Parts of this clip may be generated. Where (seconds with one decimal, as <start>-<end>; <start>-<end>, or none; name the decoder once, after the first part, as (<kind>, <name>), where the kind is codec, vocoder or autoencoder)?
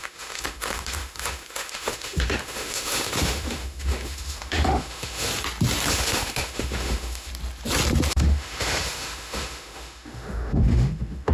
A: 0.0-5.3 (autoencoder, DAC-VAE); 5.9-7.3; 8.1-11.3